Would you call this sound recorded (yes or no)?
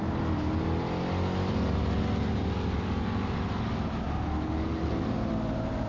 yes